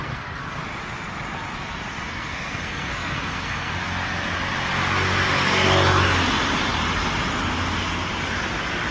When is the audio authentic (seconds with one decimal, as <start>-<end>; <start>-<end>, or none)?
0.6-1.9; 3.7-8.9